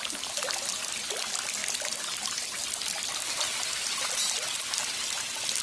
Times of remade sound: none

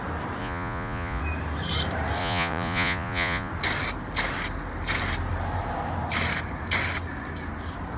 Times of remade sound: 0.4-1.2 (vocoder, Vocos); 2.2-3.5

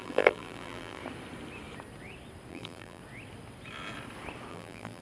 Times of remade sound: 0.0-1.0 (vocoder, BigVGAN v2); 2.5-3.0; 4.5-5.0